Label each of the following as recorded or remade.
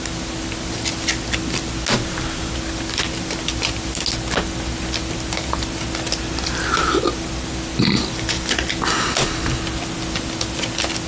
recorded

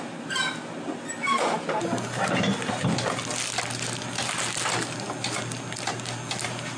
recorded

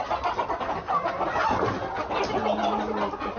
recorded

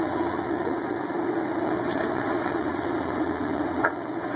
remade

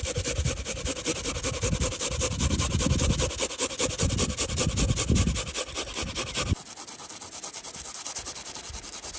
recorded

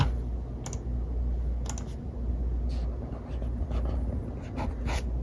recorded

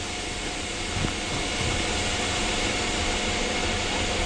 recorded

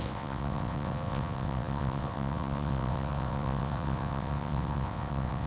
remade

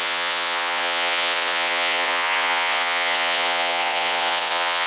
remade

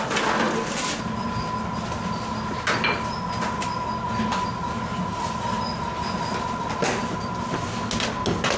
recorded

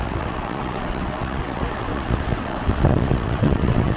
remade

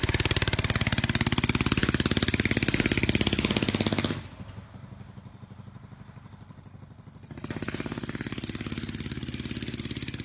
recorded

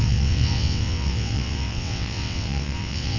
remade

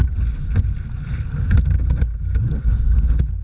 recorded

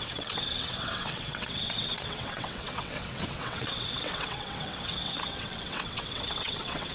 remade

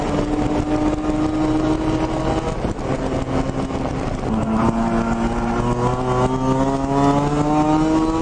recorded